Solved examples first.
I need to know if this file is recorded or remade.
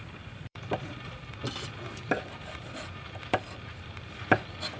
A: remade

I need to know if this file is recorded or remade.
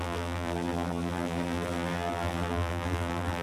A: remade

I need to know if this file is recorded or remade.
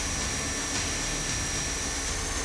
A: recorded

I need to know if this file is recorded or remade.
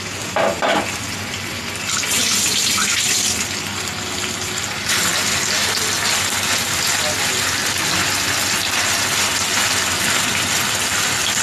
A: recorded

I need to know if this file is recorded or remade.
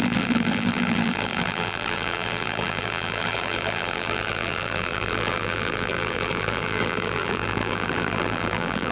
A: remade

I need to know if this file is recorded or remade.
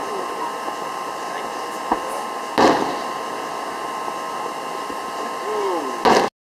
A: recorded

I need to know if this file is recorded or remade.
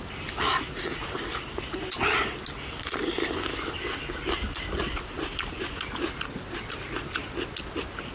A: recorded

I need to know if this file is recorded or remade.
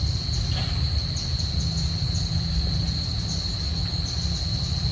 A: recorded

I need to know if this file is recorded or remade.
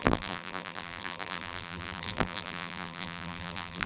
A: remade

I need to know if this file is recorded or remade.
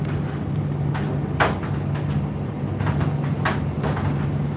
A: recorded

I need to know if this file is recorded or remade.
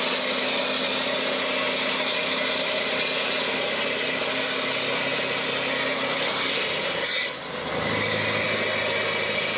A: recorded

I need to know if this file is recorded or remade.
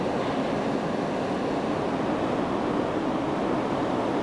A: recorded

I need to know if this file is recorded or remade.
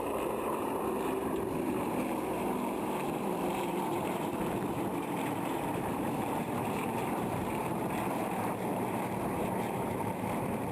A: remade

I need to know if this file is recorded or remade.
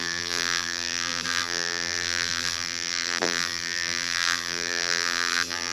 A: remade